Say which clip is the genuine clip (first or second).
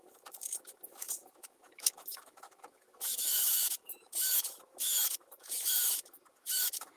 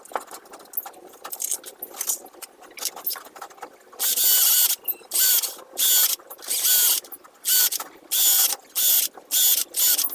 second